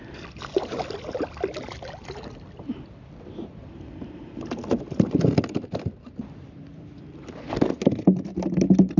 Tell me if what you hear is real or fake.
real